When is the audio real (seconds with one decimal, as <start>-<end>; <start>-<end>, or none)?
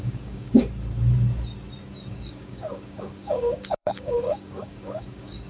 0.6-2.1